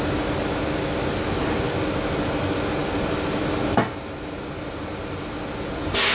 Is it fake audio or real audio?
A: real